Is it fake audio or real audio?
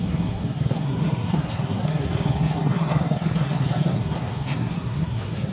fake